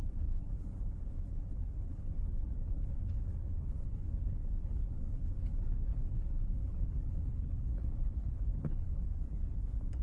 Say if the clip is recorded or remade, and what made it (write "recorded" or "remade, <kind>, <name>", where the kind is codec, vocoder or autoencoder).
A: remade, codec, HILCodec